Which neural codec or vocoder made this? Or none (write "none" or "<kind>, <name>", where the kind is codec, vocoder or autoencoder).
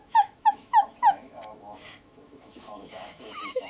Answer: autoencoder, DAC-VAE